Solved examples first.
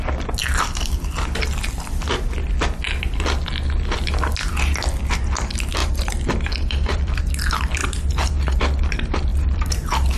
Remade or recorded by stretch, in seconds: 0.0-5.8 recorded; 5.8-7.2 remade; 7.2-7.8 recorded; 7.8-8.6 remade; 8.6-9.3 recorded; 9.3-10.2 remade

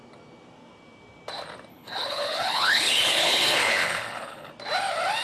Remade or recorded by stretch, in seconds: 0.0-1.7 recorded; 1.7-4.5 remade; 4.5-5.2 recorded

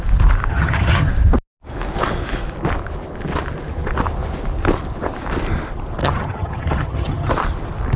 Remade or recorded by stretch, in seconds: 0.0-0.5 recorded; 0.5-1.1 remade; 1.1-6.0 recorded; 6.0-7.3 remade; 7.3-8.0 recorded

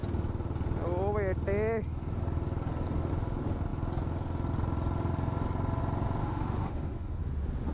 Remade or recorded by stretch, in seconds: 0.0-6.2 recorded; 6.2-7.2 remade; 7.2-7.7 recorded